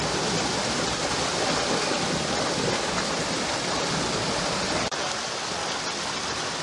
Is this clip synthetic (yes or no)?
no